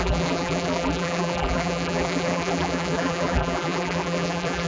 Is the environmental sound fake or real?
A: fake